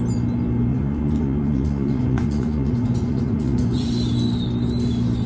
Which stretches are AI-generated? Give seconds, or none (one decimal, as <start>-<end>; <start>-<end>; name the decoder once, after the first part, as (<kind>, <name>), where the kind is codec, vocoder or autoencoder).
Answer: 0.7-3.9 (vocoder, Vocos)